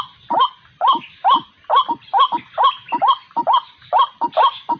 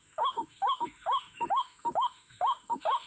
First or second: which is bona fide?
first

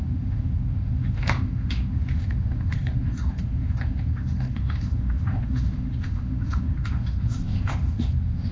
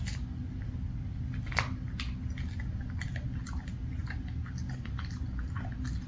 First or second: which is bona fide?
second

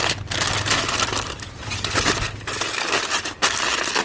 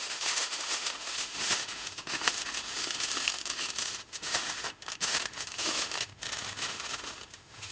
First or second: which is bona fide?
first